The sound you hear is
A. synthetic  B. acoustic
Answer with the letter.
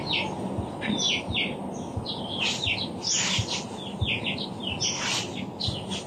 B